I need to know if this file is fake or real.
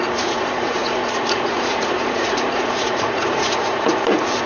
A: fake